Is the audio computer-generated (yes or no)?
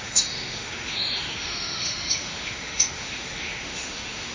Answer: yes